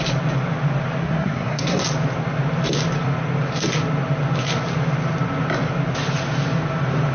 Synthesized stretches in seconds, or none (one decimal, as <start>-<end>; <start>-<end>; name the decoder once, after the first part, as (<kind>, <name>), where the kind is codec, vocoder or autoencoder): 1.0-1.8 (codec, SNAC)